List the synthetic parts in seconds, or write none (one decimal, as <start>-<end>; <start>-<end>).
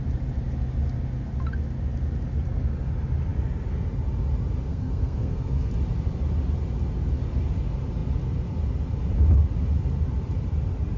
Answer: 4.7-5.7